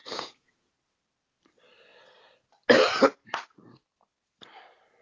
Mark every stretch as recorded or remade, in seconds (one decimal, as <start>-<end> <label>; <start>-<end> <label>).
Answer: 0.0-0.7 remade; 0.7-5.0 recorded